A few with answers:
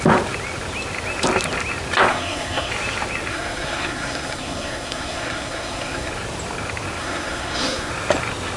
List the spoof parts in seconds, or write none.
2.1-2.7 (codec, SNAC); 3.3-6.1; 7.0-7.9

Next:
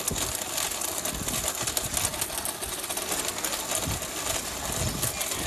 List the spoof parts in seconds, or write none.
none

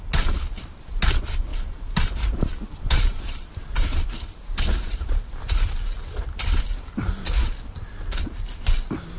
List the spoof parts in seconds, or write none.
1.5-6.6 (vocoder, BigVGAN v2)